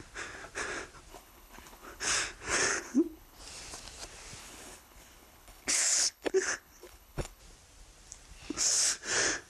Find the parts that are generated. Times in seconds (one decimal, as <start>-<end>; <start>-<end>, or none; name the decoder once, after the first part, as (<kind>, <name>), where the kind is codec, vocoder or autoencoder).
1.1-2.1 (codec, HILCodec); 2.7-3.4; 4.4-7.4